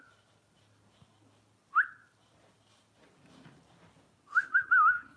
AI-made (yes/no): no